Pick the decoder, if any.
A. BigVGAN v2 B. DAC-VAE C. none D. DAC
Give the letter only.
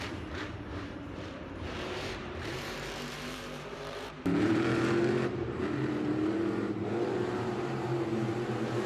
A